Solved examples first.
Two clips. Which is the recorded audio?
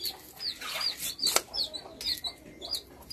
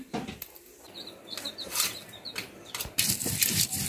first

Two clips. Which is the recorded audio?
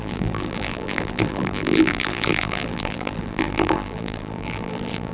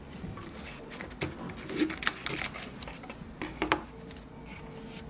second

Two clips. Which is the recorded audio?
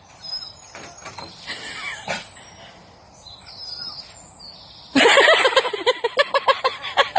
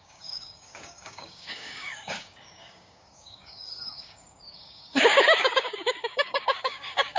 first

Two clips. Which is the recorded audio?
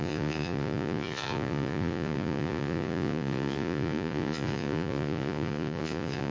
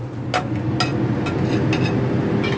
second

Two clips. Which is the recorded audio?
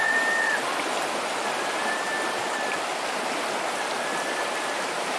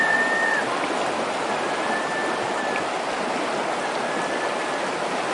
second